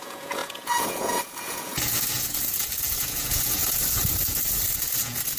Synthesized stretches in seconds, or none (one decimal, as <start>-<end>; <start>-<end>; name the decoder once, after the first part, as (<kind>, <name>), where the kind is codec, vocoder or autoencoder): 0.0-5.4 (vocoder, Vocos)

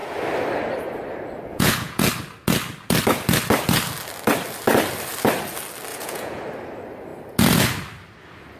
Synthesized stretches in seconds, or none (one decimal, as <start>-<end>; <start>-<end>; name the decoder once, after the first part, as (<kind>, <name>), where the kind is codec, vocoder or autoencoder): 1.5-2.1 (vocoder, Vocos); 5.9-6.4